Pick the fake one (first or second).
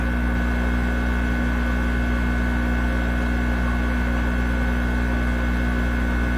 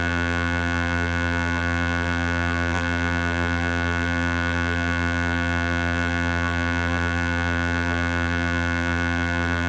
second